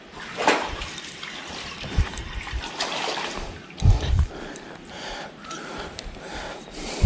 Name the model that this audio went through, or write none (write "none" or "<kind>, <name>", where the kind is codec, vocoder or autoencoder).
vocoder, BigVGAN v2